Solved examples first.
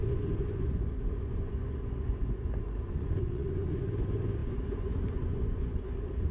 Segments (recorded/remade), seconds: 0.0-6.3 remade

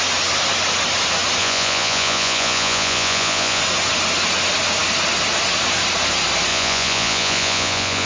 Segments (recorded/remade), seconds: 0.0-1.4 recorded; 1.4-3.6 remade; 3.6-6.5 recorded; 6.5-8.1 remade